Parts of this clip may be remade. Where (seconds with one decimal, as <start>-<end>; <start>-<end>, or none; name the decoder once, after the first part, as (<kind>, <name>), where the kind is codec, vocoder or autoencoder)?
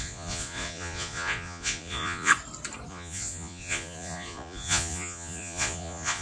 0.0-2.3 (vocoder, Vocos); 2.9-6.2